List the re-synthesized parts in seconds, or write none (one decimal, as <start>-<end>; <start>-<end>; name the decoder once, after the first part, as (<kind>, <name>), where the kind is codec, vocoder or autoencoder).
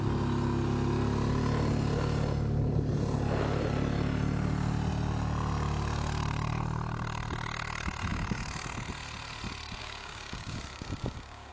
9.8-11.5 (codec, DAC)